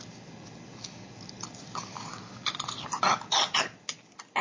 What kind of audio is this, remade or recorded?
recorded